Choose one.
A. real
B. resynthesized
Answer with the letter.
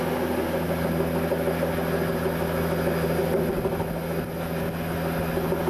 A